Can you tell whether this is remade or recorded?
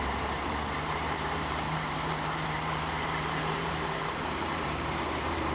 remade